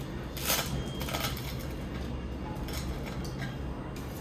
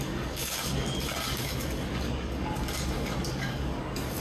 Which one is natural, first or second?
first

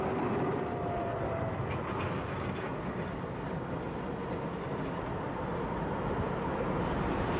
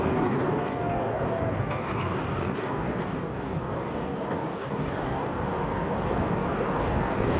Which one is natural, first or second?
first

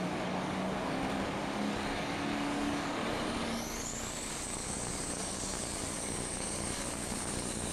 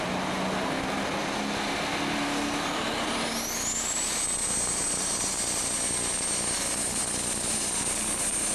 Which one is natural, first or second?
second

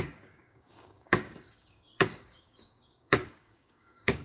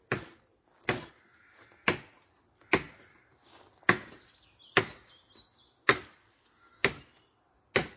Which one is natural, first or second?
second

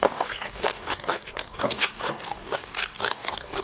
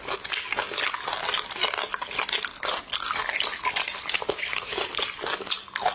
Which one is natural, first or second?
second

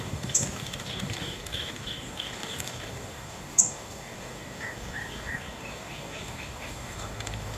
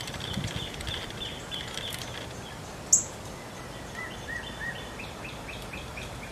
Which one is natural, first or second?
second